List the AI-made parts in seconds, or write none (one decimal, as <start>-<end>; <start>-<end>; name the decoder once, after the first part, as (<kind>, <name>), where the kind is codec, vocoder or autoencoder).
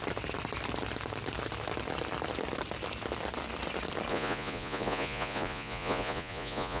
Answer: 4.1-6.8 (vocoder, Vocos)